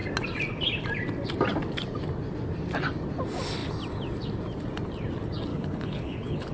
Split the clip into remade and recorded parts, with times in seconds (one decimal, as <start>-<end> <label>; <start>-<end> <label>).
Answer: 0.0-5.5 recorded; 5.5-6.5 remade